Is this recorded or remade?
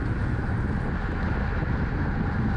recorded